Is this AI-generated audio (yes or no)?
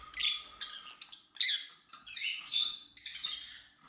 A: no